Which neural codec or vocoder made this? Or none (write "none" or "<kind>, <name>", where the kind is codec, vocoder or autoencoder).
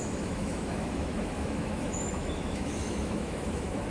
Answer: autoencoder, DAC-VAE